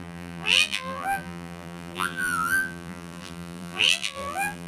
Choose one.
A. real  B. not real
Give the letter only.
B